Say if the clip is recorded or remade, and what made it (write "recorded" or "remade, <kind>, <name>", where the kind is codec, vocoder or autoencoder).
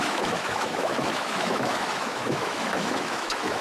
remade, autoencoder, DAC-VAE